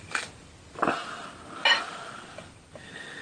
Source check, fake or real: real